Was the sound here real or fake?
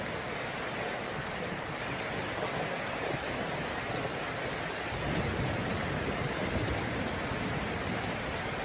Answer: real